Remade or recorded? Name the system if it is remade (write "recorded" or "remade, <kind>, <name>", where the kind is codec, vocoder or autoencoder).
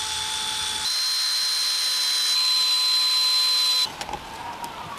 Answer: recorded